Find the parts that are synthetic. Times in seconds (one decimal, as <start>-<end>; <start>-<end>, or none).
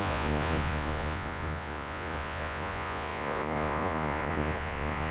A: 0.0-5.1